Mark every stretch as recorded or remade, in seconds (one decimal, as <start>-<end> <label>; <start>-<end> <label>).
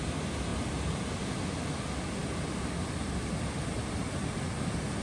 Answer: 0.0-5.0 recorded